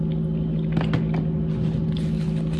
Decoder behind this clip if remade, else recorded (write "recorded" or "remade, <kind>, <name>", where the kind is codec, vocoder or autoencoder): recorded